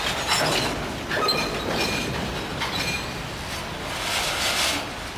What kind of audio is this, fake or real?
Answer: real